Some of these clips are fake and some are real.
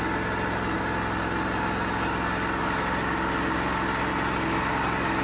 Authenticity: real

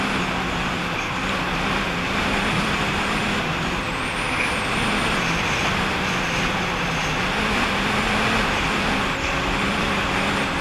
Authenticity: real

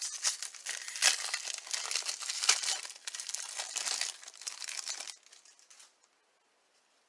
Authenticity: real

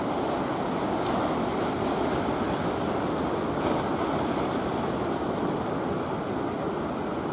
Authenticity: real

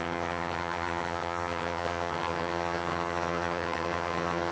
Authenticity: fake